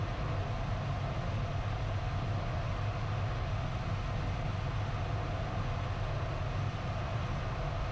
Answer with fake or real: real